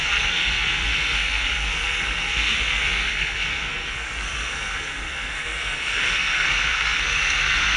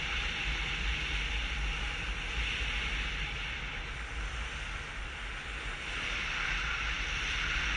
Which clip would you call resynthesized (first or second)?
first